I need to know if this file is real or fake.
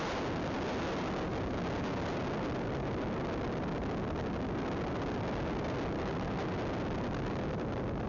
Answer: real